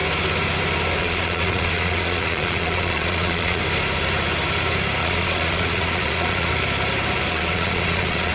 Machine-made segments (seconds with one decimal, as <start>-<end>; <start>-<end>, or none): 1.0-3.6; 5.0-6.5; 7.3-8.3